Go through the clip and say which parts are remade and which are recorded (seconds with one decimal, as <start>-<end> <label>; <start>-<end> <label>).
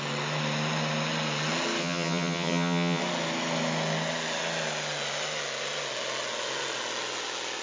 0.0-1.8 recorded; 1.8-3.0 remade; 3.0-7.6 recorded